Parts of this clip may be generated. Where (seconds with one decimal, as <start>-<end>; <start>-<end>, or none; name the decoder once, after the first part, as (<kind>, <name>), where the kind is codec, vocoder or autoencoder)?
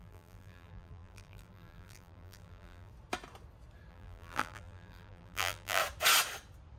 0.0-2.9 (vocoder, BigVGAN v2); 3.9-5.8